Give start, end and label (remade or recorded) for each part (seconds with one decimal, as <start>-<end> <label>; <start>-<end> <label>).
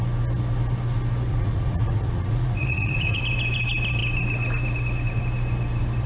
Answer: 0.0-1.3 recorded; 1.3-3.2 remade; 3.2-6.1 recorded